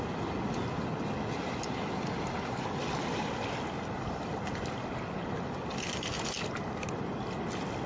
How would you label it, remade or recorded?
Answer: recorded